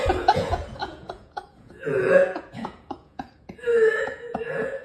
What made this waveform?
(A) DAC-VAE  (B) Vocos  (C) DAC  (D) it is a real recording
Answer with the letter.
B